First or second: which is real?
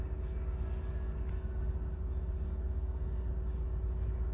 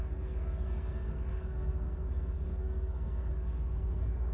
first